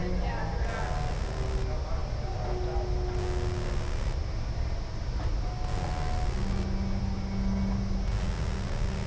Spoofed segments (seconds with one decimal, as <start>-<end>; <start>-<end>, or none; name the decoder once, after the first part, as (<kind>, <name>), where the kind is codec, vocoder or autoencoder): none